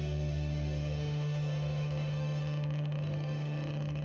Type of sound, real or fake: fake